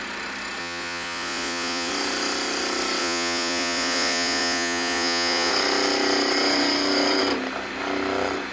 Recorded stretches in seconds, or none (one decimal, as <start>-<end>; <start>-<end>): 0.0-0.6; 1.9-3.0; 5.5-8.5